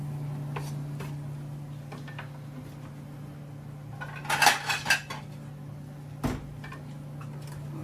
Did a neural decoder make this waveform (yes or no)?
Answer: no